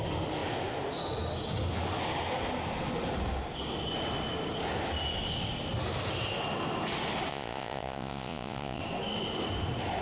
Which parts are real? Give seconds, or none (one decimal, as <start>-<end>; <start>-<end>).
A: 0.0-7.3; 8.8-10.0